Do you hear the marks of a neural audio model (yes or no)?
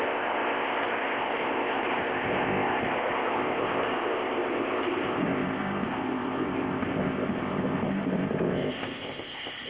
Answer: yes